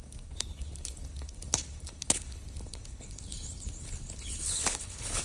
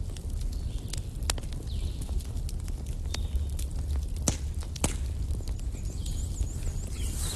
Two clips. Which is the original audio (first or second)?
second